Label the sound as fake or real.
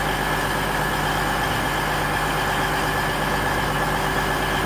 real